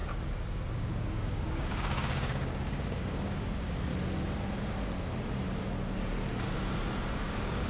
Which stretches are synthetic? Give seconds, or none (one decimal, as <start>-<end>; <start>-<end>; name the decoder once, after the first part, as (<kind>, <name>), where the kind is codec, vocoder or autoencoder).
0.7-3.9 (codec, DAC); 7.1-7.7